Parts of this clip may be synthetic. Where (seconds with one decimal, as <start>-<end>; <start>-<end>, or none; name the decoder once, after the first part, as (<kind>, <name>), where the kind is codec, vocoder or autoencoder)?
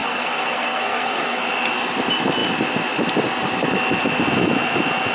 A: 0.0-1.4 (codec, SNAC)